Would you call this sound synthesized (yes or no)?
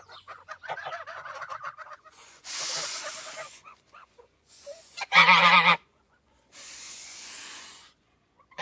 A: yes